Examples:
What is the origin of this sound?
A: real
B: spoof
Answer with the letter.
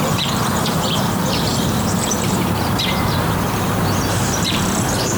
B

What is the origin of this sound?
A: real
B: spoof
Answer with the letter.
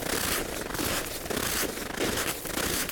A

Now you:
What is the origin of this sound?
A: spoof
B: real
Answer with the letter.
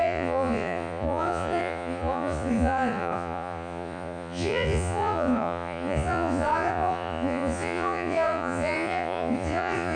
A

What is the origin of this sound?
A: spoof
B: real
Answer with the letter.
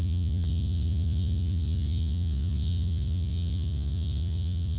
A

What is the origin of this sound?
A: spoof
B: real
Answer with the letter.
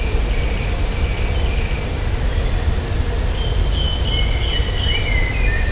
B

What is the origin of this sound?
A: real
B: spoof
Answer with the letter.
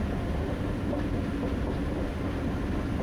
A